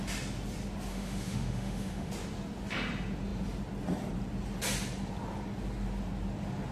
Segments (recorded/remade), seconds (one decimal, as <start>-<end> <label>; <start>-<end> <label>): 0.0-0.9 recorded; 0.9-2.1 remade; 2.1-6.7 recorded